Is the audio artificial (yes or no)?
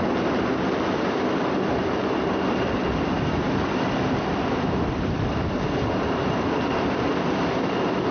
no